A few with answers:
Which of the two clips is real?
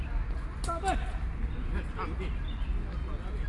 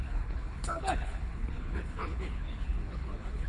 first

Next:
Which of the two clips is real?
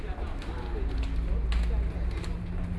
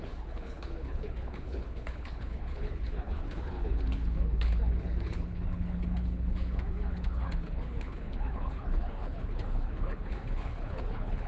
first